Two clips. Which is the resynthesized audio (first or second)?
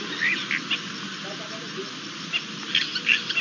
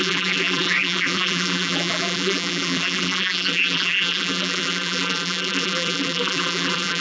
second